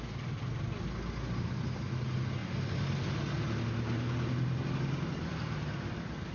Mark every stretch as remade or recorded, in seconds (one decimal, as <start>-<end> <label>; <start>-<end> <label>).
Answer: 0.0-6.3 recorded

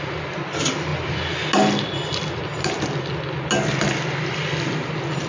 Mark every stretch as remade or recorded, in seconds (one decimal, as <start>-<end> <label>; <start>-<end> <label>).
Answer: 0.0-5.3 recorded

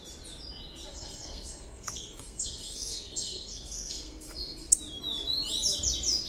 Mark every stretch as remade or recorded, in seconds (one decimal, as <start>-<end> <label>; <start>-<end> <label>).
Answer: 0.0-0.9 recorded; 0.9-4.7 remade; 4.7-6.3 recorded

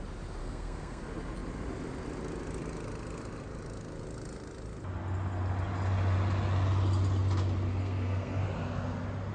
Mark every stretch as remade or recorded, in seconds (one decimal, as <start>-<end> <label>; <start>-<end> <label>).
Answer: 0.0-0.4 recorded; 0.4-1.0 remade; 1.0-7.8 recorded; 7.8-8.4 remade; 8.4-9.3 recorded

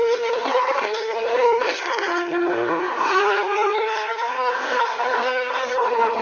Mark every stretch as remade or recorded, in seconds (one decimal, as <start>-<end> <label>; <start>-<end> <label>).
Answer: 0.0-6.2 remade

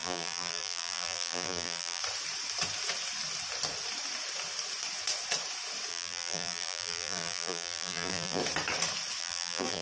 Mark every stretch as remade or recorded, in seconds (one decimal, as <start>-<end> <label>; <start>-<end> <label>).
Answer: 0.0-2.0 remade; 2.0-5.9 recorded; 5.9-8.4 remade; 8.4-9.2 recorded; 9.2-9.8 remade